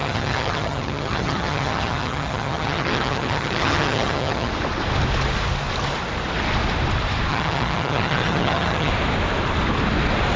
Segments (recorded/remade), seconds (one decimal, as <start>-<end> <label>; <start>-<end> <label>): 0.0-4.5 remade; 4.5-7.3 recorded; 7.3-8.9 remade; 8.9-10.4 recorded